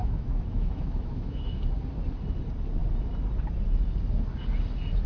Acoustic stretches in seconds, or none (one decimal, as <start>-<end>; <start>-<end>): 1.6-5.1